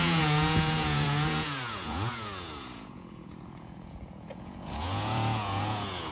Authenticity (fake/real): fake